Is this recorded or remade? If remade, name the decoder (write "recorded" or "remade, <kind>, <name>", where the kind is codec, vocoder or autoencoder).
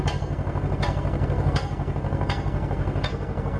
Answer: remade, codec, SNAC